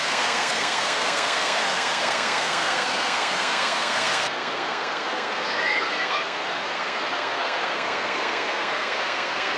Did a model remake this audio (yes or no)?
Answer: yes